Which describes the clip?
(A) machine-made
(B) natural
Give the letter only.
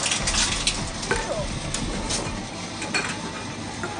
B